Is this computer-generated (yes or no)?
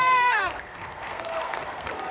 yes